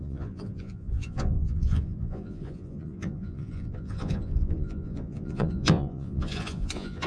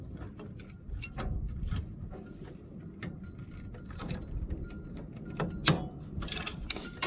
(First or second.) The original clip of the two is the second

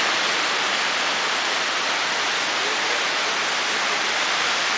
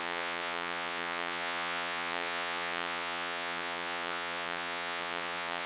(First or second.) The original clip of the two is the first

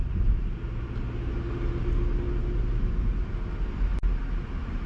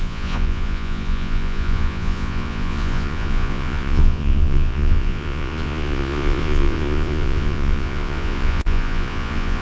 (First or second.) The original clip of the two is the first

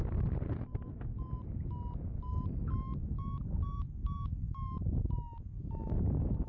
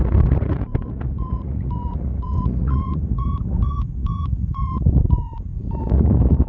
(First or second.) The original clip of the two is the first